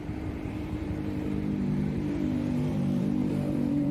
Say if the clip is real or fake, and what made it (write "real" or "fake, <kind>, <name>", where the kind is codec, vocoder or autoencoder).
fake, vocoder, BigVGAN v2